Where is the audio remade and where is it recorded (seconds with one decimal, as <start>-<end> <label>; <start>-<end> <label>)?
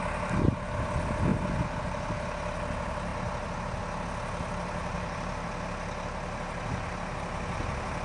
0.0-4.8 recorded; 4.8-5.5 remade; 5.5-8.0 recorded